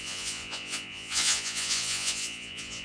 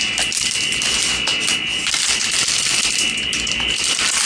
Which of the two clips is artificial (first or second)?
first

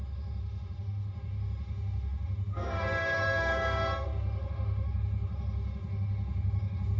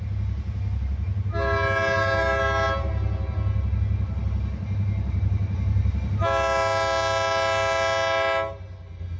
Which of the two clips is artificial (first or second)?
first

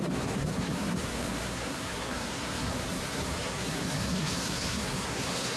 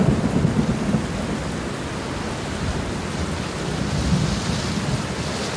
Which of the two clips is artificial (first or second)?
first